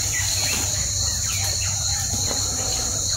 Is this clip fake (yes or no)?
no